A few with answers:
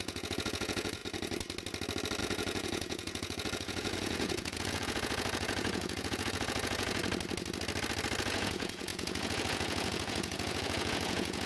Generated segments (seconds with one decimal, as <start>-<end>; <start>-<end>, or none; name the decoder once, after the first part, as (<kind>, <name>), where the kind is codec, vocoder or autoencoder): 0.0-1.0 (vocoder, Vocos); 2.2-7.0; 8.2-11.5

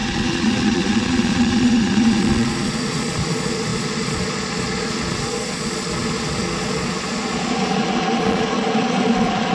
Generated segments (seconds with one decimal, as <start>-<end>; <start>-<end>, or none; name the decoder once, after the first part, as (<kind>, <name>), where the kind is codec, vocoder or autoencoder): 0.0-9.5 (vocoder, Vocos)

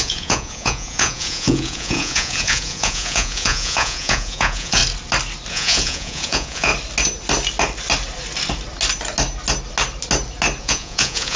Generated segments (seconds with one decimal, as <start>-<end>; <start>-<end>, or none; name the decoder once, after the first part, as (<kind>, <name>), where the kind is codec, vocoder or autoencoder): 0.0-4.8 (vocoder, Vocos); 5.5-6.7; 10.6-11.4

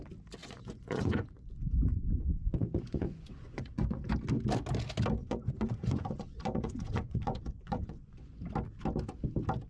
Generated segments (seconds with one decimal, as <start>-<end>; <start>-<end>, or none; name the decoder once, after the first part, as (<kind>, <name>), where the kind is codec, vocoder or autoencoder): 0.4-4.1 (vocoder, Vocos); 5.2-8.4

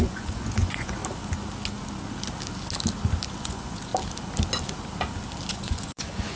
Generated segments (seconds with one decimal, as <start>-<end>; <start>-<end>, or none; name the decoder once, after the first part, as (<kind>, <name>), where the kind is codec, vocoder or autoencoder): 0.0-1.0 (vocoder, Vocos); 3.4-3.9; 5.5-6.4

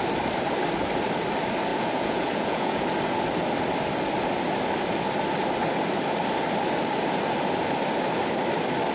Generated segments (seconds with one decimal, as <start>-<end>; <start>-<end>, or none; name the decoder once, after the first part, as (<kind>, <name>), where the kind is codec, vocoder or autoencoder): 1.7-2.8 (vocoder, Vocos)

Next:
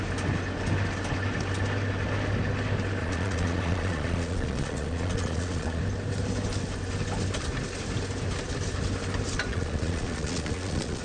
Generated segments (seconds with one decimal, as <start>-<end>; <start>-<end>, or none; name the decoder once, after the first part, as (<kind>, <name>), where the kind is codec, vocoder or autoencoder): 3.0-5.8 (vocoder, Vocos); 9.5-11.0

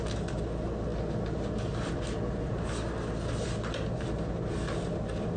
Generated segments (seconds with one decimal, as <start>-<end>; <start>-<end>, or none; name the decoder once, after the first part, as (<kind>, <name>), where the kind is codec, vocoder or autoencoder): none